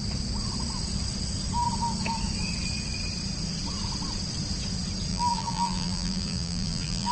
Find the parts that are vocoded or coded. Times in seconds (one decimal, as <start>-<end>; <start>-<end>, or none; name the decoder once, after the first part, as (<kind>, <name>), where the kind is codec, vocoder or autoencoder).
5.1-7.1 (vocoder, BigVGAN v2)